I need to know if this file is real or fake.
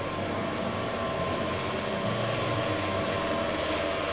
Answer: real